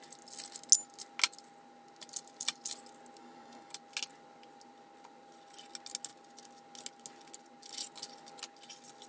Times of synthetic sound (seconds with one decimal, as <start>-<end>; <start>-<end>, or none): 3.2-3.7